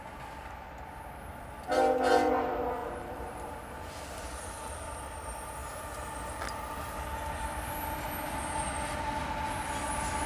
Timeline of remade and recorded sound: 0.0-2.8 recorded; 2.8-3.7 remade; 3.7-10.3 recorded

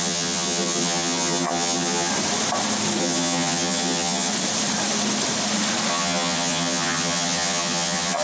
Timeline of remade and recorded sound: 0.0-2.1 remade; 2.1-3.0 recorded; 3.0-4.3 remade; 4.3-5.9 recorded; 5.9-8.2 remade